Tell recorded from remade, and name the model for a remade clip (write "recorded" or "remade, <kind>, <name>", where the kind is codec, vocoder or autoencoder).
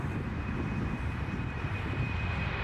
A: remade, vocoder, BigVGAN v2